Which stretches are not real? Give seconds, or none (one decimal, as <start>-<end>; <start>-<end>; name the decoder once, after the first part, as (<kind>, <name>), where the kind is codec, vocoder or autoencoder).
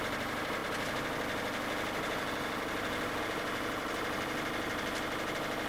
none